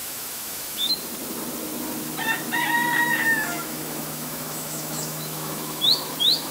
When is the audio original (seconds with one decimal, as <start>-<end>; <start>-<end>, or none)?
0.9-3.1